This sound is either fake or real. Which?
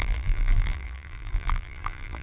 fake